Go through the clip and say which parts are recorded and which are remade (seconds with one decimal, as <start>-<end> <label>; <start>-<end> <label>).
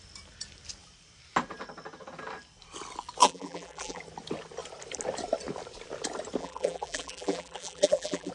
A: 0.0-3.2 recorded; 3.2-4.0 remade; 4.0-6.4 recorded; 6.4-8.3 remade